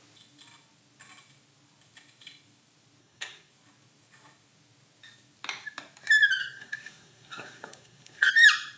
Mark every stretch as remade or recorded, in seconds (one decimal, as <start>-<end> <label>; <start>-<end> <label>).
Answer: 0.0-3.0 recorded; 3.0-3.5 remade; 3.5-6.4 recorded; 6.4-8.3 remade; 8.3-8.8 recorded